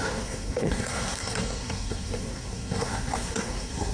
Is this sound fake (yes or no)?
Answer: yes